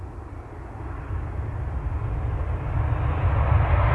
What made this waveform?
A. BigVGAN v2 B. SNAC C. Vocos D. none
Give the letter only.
D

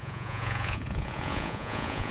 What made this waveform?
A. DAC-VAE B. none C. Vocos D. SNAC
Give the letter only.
C